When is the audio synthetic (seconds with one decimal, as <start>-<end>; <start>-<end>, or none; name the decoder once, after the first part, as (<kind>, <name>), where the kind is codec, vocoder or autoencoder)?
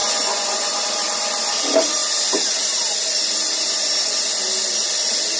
0.0-0.8 (vocoder, Vocos)